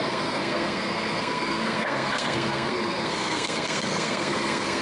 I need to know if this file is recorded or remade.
remade